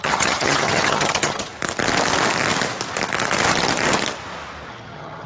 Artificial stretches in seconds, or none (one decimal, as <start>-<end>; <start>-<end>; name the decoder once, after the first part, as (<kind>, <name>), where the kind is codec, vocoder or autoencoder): 0.0-1.5 (vocoder, HiFi-GAN); 4.7-5.3